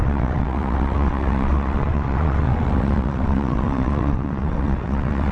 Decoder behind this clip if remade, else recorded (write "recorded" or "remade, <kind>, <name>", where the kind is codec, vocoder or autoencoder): remade, vocoder, WaveNeXt